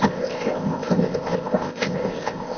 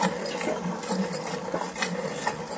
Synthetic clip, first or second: first